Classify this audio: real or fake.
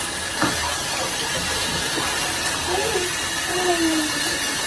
real